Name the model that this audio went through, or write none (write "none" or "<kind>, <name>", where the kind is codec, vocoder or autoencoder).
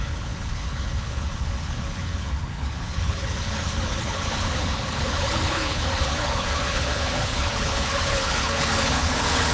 codec, HILCodec